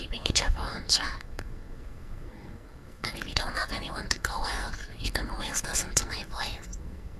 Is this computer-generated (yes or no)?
yes